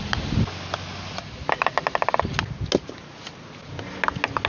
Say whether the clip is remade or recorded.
recorded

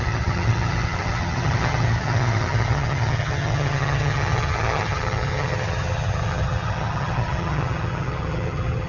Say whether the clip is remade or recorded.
remade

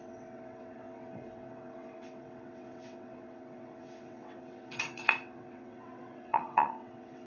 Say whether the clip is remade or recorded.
remade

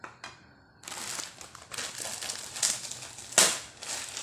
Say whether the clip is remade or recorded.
recorded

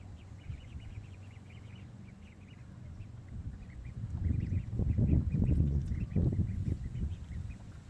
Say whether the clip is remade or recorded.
remade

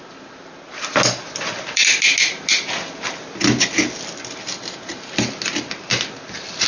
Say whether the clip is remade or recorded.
recorded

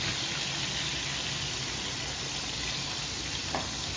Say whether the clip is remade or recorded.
recorded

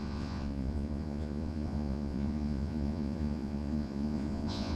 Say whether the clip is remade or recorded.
remade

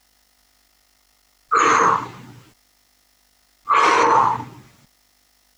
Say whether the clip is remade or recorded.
recorded